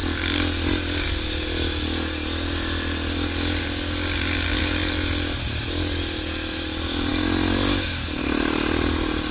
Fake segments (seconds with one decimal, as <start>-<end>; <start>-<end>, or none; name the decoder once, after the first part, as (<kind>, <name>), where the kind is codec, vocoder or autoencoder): none